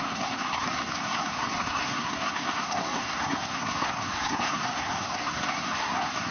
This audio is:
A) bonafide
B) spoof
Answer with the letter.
B